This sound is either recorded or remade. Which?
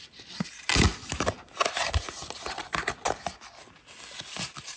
recorded